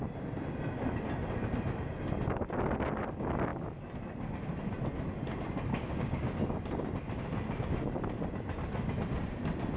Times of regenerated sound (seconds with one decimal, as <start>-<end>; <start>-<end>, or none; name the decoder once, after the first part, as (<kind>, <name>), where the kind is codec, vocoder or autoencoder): 5.7-6.4 (codec, DAC)